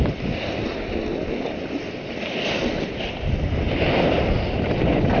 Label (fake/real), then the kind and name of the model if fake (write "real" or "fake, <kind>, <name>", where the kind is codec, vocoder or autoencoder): real